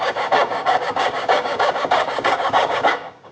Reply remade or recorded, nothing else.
remade